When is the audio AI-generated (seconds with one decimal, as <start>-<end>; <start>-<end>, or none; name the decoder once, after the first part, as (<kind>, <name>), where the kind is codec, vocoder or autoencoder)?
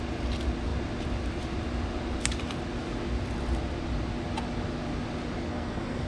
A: 5.5-6.1 (codec, SNAC)